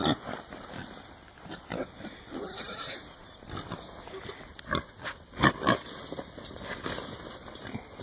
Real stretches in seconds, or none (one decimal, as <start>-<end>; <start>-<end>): 0.0-8.0